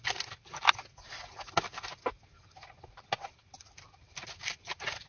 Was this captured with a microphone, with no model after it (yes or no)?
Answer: yes